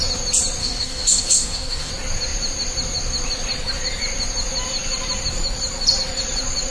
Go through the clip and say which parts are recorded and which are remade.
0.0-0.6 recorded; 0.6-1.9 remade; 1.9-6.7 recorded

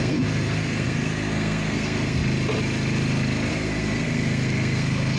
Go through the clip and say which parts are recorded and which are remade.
0.0-2.2 remade; 2.2-3.5 recorded; 3.5-5.2 remade

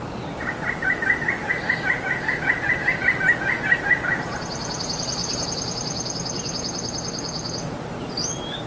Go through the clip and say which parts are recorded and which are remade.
0.0-8.7 recorded

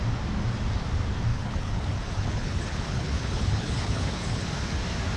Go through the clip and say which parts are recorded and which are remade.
0.0-1.3 recorded; 1.3-4.4 remade; 4.4-5.2 recorded

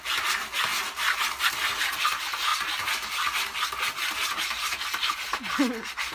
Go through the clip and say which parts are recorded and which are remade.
0.0-6.1 recorded